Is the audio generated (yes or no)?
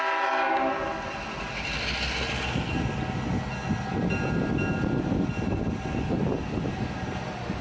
no